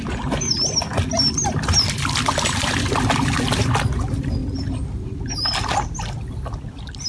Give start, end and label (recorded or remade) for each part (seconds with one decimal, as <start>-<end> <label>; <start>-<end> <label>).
0.0-7.1 recorded

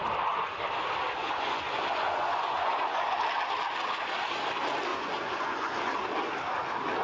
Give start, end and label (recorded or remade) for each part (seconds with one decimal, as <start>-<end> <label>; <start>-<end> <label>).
0.0-1.2 recorded; 1.2-3.0 remade; 3.0-4.9 recorded; 4.9-5.9 remade; 5.9-7.0 recorded

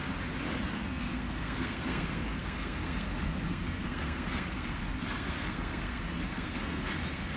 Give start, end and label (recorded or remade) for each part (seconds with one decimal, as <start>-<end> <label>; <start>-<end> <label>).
0.0-0.7 recorded; 0.7-7.4 remade

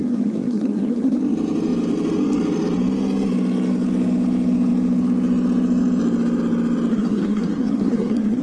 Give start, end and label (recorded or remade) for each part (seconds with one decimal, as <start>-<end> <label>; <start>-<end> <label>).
0.0-1.2 remade; 1.2-6.9 recorded; 6.9-8.4 remade

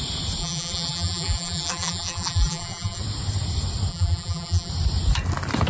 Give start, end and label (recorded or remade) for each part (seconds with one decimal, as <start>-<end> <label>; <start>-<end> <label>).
0.0-0.4 recorded; 0.4-3.0 remade; 3.0-3.9 recorded; 3.9-4.7 remade; 4.7-5.7 recorded

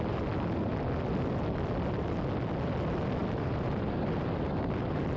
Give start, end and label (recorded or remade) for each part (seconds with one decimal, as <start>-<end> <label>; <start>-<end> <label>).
0.0-3.2 recorded; 3.2-3.9 remade; 3.9-5.2 recorded